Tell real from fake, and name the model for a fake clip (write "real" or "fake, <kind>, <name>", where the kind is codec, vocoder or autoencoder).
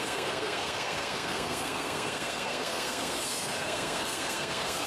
fake, codec, SNAC